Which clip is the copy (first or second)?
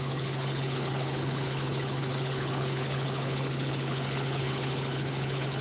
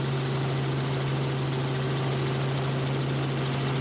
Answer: first